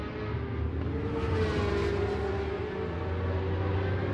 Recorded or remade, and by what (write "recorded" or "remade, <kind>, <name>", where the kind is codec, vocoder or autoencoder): recorded